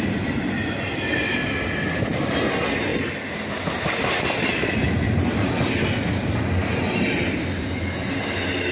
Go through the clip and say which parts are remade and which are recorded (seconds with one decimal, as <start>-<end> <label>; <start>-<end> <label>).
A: 0.0-8.7 recorded

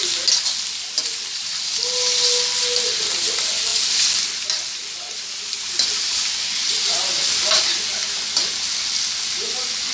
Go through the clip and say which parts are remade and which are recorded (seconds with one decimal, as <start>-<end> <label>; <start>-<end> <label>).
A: 0.0-9.9 recorded

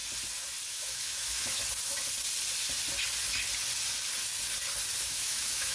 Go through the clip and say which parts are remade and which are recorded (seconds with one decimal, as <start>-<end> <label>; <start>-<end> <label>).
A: 0.0-0.7 recorded; 0.7-1.6 remade; 1.6-5.0 recorded; 5.0-5.7 remade

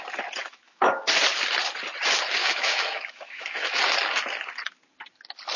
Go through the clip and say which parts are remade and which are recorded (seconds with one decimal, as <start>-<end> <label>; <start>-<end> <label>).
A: 0.0-0.4 recorded; 0.4-1.0 remade; 1.0-2.4 recorded; 2.4-3.8 remade; 3.8-5.6 recorded

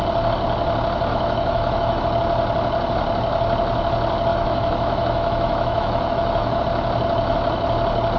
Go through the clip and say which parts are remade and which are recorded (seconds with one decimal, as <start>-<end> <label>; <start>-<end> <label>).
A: 0.0-1.1 recorded; 1.1-2.0 remade; 2.0-4.3 recorded; 4.3-6.6 remade; 6.6-8.2 recorded

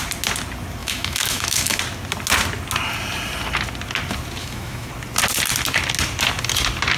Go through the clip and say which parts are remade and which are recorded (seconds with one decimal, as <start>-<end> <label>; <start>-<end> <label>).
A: 0.0-0.8 recorded; 0.8-1.8 remade; 1.8-4.4 recorded; 4.4-4.9 remade; 4.9-7.0 recorded